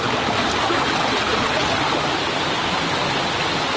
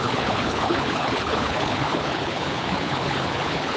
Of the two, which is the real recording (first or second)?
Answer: first